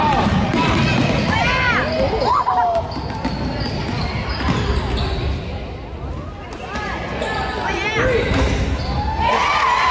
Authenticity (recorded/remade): recorded